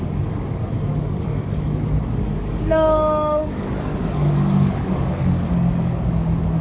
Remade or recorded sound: remade